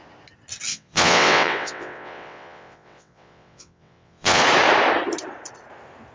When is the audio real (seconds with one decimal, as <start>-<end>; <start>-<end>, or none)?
0.0-0.7; 4.4-6.1